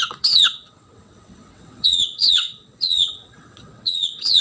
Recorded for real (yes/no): no